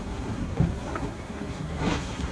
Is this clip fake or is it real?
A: fake